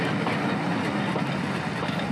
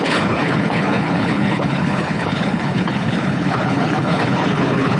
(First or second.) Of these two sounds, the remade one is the second